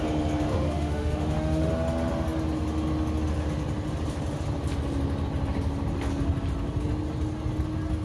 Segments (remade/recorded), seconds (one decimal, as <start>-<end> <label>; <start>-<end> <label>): 0.0-0.5 recorded; 0.5-1.7 remade; 1.7-8.0 recorded